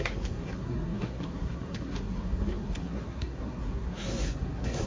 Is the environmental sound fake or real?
fake